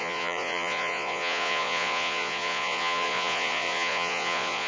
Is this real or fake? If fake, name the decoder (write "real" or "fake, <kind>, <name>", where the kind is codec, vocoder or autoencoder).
fake, vocoder, Vocos